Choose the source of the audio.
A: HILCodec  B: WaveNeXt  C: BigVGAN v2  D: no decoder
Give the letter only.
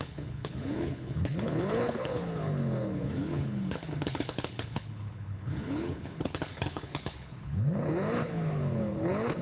A